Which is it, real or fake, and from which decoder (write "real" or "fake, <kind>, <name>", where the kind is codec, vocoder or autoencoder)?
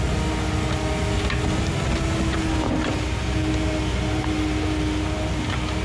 real